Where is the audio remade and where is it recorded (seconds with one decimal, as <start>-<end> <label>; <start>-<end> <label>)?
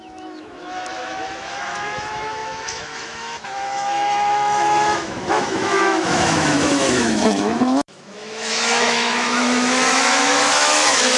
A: 0.0-11.2 remade